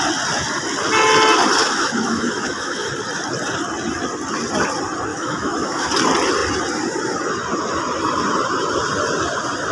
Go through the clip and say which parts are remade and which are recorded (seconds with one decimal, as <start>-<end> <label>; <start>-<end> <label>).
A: 0.0-1.6 recorded; 1.6-2.9 remade; 2.9-5.1 recorded; 5.1-5.9 remade; 5.9-9.7 recorded